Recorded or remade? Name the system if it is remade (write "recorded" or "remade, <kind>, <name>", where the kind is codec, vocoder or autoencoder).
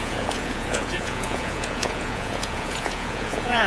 remade, vocoder, Vocos